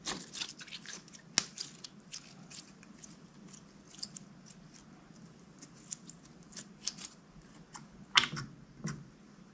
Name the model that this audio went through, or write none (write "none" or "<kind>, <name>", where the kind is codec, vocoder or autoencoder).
none